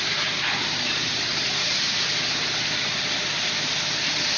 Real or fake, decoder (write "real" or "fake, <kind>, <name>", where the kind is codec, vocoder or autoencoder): real